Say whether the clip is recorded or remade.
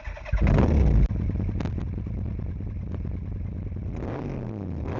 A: recorded